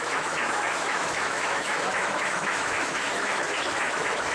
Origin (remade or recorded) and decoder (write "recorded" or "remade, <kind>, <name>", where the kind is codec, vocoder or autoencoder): remade, autoencoder, DAC-VAE